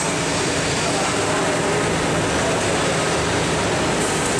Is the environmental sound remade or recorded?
recorded